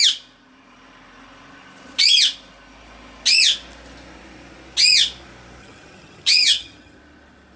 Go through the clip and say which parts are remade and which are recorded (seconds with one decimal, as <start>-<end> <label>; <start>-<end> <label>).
0.0-5.6 recorded; 5.6-7.0 remade; 7.0-7.6 recorded